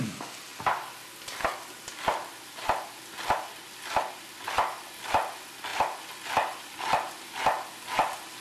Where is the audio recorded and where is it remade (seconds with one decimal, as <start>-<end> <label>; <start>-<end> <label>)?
0.0-5.7 recorded; 5.7-6.7 remade; 6.7-8.4 recorded